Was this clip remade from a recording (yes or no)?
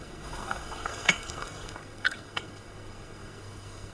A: yes